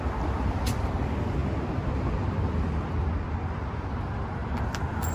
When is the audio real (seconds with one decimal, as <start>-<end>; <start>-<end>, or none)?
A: 0.0-5.1